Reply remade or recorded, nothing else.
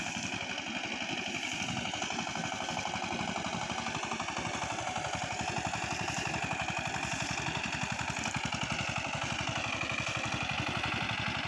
recorded